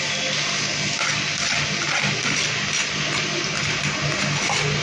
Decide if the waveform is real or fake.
real